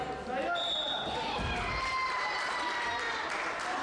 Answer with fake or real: real